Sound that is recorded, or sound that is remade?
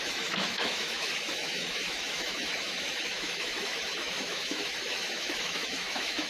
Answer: remade